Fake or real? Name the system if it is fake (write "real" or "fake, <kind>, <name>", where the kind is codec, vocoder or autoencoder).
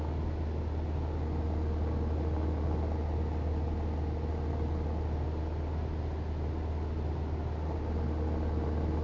real